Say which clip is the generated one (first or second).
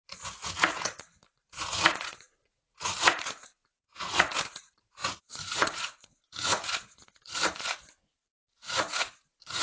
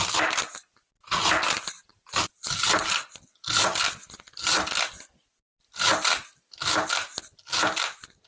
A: first